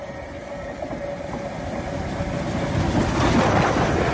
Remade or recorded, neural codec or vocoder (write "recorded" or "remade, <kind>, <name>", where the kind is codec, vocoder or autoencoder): recorded